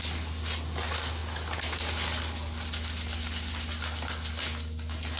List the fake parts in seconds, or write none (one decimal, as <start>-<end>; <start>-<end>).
none

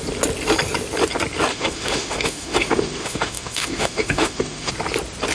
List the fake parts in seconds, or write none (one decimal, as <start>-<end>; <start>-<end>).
1.5-4.7

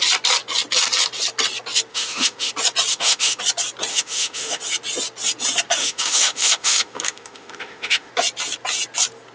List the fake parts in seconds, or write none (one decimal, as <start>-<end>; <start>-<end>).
1.9-2.5; 2.9-3.4; 3.9-4.6; 5.8-8.1